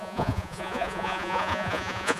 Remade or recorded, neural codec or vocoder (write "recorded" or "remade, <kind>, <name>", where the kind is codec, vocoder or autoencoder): remade, vocoder, Vocos